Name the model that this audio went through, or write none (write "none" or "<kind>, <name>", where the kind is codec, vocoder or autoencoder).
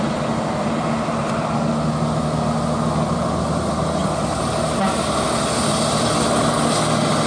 none